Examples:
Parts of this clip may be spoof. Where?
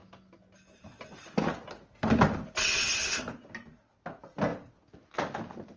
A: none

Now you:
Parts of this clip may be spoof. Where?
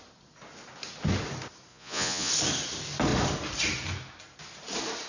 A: 1.7-2.3 (vocoder, Vocos)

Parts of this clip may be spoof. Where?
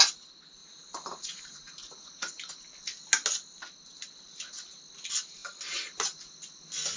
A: 0.6-2.5 (vocoder, Vocos)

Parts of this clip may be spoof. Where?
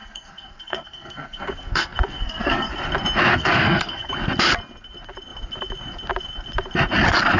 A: 0.0-2.7 (codec, SNAC); 3.3-4.1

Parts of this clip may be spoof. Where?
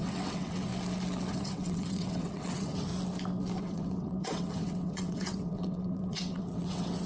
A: 0.0-0.7 (vocoder, WaveNeXt); 1.3-2.9; 3.6-7.1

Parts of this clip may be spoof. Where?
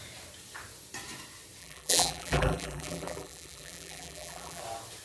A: 1.6-4.6 (vocoder, BigVGAN v2)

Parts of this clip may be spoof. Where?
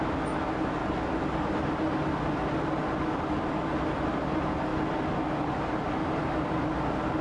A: none